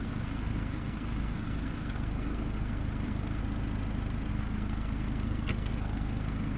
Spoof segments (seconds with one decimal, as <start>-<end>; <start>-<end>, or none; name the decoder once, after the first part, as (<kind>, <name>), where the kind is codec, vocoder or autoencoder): 0.0-3.4 (codec, SNAC); 4.3-6.6